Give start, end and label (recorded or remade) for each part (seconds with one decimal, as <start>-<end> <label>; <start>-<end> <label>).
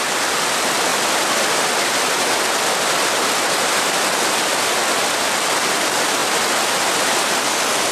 0.0-7.9 recorded